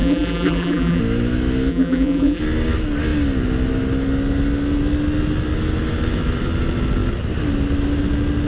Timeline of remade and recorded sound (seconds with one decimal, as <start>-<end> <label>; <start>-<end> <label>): 0.0-1.0 remade; 1.0-1.7 recorded; 1.7-2.4 remade; 2.4-8.5 recorded